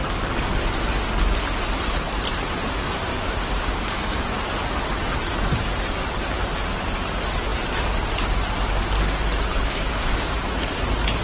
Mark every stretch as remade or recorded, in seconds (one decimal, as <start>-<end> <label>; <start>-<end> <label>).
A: 0.0-3.1 recorded; 3.1-4.2 remade; 4.2-9.5 recorded; 9.5-10.4 remade; 10.4-11.2 recorded